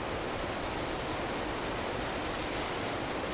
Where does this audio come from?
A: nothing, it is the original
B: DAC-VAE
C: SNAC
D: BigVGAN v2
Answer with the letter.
A